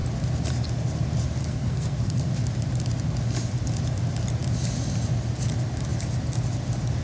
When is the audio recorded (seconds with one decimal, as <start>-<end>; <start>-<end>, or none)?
0.0-1.4; 2.3-7.0